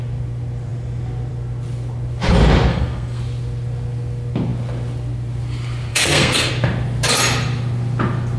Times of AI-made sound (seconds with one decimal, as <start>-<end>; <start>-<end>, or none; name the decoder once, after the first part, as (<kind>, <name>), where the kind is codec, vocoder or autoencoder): 2.7-3.2 (codec, SNAC); 5.9-6.5